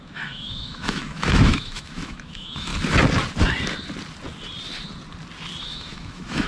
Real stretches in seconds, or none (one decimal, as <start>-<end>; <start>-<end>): 2.7-5.6